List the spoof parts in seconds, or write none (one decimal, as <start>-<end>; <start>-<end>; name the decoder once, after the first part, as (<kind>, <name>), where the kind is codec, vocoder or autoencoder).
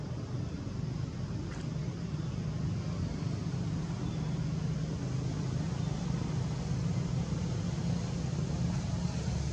none